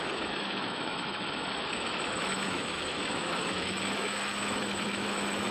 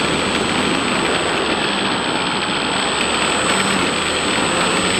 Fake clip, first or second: first